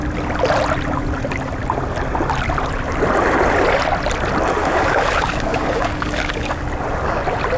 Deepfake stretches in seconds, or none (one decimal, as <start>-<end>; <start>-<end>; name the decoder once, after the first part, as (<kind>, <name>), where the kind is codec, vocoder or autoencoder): 4.6-6.6 (codec, DAC)